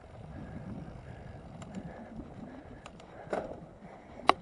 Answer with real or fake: fake